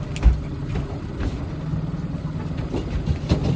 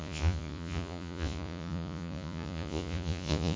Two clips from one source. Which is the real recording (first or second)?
first